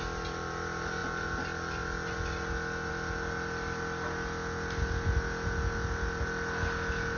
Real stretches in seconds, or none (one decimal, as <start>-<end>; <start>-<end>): 0.0-7.2